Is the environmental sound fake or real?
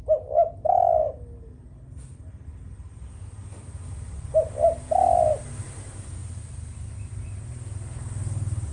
real